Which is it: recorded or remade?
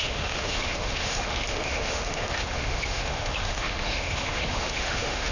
remade